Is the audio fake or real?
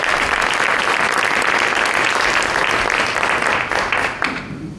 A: real